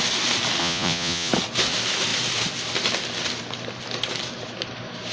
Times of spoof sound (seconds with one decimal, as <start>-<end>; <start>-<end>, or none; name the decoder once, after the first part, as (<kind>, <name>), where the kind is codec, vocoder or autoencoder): 0.6-1.3 (vocoder, Vocos)

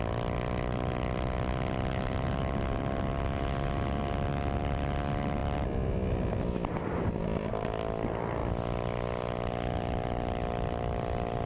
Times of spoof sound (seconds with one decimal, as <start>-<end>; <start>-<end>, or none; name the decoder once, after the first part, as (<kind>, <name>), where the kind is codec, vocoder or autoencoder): 8.4-11.5 (vocoder, BigVGAN v2)